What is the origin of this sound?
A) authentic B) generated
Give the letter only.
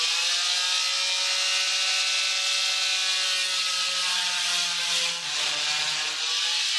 A